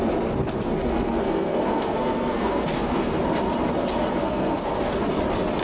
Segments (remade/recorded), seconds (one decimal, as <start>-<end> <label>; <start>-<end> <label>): 0.0-0.9 recorded; 0.9-3.2 remade; 3.2-4.2 recorded; 4.2-4.9 remade; 4.9-5.6 recorded